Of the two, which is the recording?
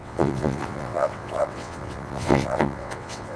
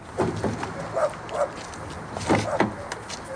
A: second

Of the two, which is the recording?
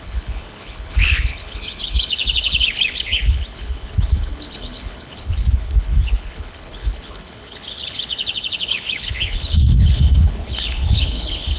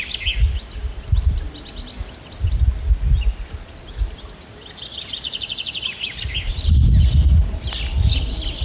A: second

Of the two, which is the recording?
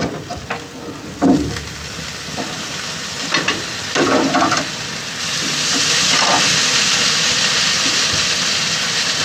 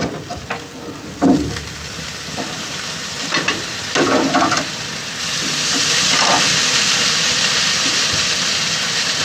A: first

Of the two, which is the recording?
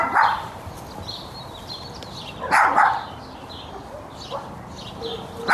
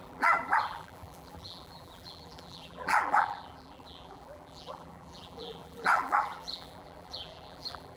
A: first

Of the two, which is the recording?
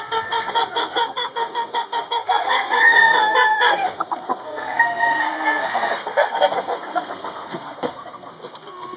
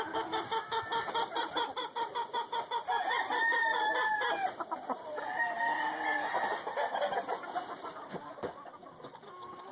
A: second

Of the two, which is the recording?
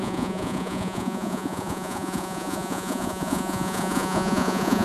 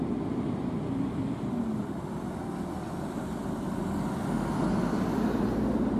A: second